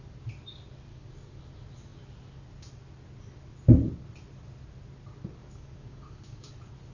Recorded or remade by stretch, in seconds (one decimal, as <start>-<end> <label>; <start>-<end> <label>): 0.0-0.9 recorded; 0.9-1.4 remade; 1.4-5.4 recorded; 5.4-6.5 remade; 6.5-6.9 recorded